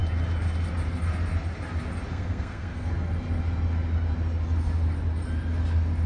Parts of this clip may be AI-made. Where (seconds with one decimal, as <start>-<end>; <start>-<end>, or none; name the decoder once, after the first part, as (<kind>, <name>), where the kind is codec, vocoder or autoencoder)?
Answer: 2.1-2.9 (codec, SNAC)